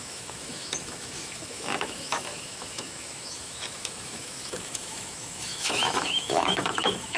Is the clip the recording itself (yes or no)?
no